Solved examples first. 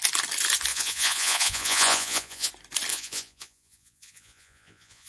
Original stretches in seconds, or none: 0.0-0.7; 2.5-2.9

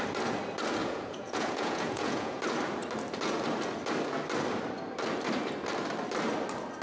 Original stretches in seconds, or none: 0.0-0.8; 2.4-6.8

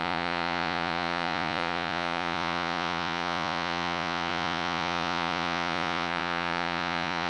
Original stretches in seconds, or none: none

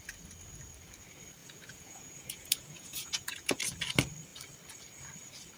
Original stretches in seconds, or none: 0.0-1.4; 3.6-5.6

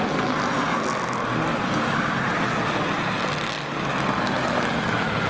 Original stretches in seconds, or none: 0.0-5.3

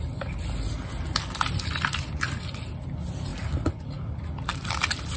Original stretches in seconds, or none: 0.0-5.2